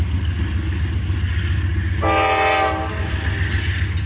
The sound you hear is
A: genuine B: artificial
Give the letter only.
A